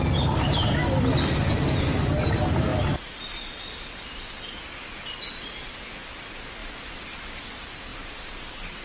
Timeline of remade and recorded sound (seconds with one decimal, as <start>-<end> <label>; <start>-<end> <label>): 0.0-2.7 recorded; 2.7-4.6 remade; 4.6-6.6 recorded; 6.6-7.4 remade; 7.4-7.9 recorded; 7.9-8.8 remade